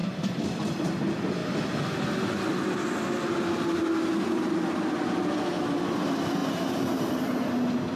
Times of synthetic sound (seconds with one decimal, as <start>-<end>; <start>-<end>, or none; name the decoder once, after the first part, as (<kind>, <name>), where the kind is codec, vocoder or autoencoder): none